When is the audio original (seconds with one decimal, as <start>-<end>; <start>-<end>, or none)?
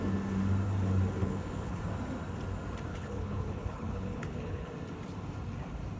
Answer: 0.0-1.2; 1.8-2.9; 4.7-6.0